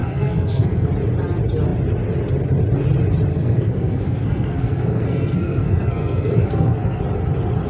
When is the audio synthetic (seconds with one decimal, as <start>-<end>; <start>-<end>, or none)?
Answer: 0.0-0.9; 3.3-7.0

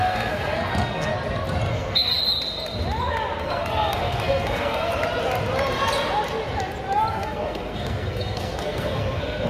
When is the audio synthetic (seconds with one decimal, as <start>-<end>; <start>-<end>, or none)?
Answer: 0.0-1.1; 1.7-2.1; 3.4-4.9; 7.1-9.5

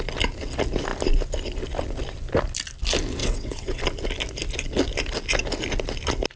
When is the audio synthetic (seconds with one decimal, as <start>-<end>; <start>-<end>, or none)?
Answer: 3.2-3.8

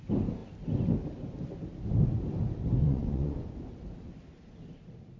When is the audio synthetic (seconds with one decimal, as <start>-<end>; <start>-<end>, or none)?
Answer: 2.8-3.5

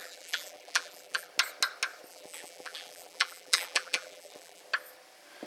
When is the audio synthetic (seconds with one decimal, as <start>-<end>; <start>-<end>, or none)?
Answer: 0.0-1.3; 2.1-4.6